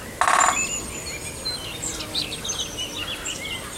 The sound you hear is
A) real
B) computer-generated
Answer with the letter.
A